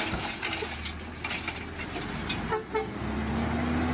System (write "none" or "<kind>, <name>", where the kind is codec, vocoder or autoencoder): none